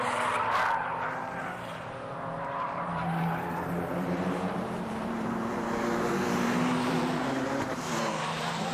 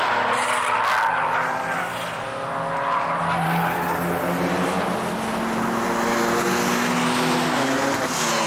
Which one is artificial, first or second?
first